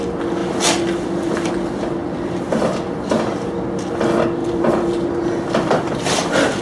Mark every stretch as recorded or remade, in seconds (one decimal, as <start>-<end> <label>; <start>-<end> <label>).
0.0-0.4 recorded; 0.4-1.5 remade; 1.5-4.4 recorded; 4.4-6.6 remade